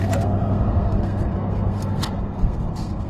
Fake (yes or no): yes